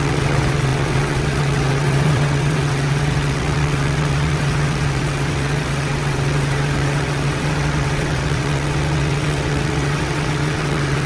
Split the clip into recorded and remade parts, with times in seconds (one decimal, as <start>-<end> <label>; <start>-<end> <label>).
0.0-11.1 remade